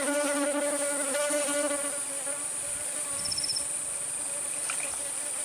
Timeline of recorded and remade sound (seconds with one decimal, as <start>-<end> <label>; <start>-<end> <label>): 0.0-1.2 remade; 1.2-2.1 recorded; 2.1-5.4 remade